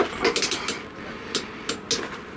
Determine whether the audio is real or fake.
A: real